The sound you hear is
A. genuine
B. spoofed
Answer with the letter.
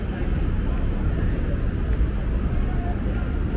A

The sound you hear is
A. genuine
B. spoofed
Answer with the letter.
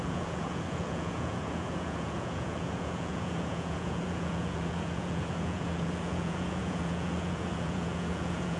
B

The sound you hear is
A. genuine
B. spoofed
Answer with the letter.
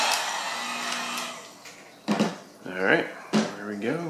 A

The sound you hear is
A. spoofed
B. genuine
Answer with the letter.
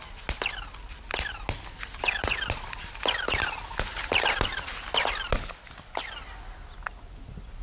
B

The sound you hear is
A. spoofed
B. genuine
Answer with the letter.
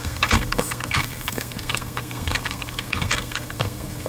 A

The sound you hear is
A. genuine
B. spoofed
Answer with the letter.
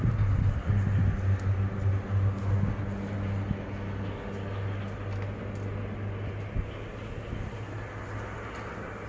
A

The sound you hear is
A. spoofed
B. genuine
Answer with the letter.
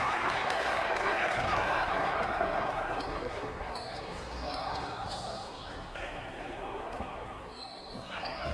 A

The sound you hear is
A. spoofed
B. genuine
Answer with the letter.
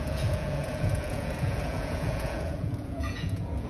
A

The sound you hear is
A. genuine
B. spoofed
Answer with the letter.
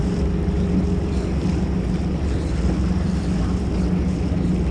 A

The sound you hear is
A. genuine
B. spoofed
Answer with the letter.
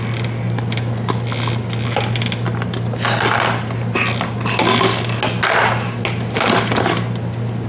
A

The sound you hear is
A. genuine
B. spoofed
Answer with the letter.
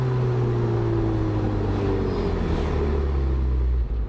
A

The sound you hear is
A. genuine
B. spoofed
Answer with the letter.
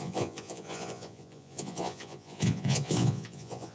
B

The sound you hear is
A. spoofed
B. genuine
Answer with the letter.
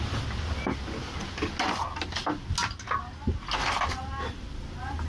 B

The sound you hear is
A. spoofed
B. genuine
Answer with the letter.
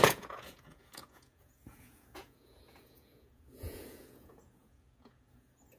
A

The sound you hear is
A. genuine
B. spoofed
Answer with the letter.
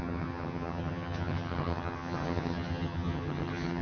B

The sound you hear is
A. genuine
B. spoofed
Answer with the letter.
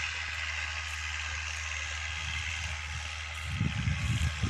A